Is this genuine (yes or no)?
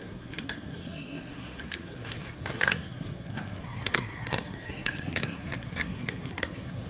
no